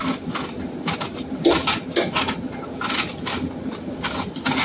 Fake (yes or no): no